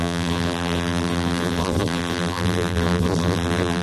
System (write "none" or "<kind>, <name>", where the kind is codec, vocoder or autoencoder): vocoder, BigVGAN v2